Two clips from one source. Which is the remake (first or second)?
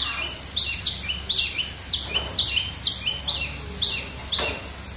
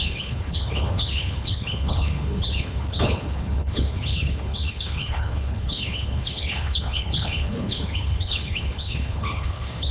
second